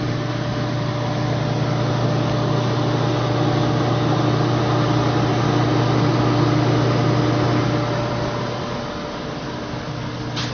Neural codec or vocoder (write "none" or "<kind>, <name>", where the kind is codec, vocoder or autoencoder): none